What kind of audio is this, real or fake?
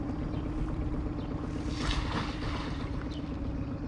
real